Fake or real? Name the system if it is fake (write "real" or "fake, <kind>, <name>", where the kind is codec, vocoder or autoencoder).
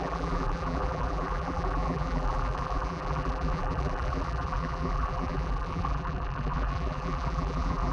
fake, vocoder, BigVGAN v2